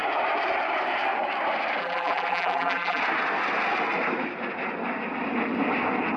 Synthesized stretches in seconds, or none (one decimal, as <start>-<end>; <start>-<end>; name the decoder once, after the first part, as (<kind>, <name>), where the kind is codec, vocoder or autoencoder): 1.8-3.0 (vocoder, BigVGAN v2)